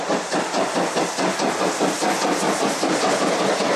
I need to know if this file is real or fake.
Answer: real